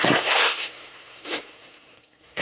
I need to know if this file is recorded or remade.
remade